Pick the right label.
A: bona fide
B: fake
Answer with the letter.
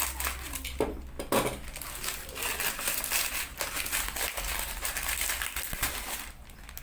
A